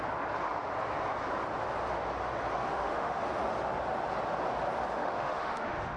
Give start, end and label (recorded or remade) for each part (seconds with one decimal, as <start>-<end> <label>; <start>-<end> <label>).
0.0-2.7 recorded; 2.7-3.2 remade; 3.2-5.0 recorded; 5.0-6.0 remade